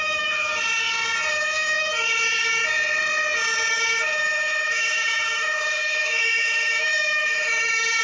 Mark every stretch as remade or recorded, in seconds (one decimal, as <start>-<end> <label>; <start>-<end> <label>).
0.0-0.5 remade; 0.5-1.3 recorded; 1.3-2.6 remade; 2.6-3.7 recorded; 3.7-8.0 remade